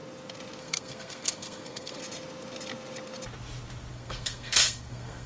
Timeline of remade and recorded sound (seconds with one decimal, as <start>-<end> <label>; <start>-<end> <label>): 0.0-0.6 recorded; 0.6-2.0 remade; 2.0-3.9 recorded; 3.9-5.3 remade